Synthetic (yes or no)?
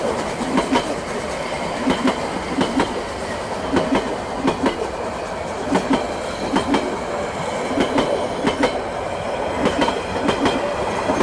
no